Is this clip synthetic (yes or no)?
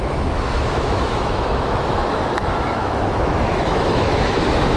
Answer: yes